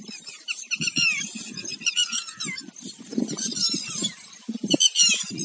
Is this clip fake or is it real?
real